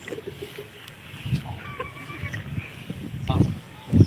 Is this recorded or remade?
remade